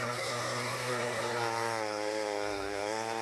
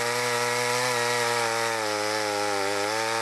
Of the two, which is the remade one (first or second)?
first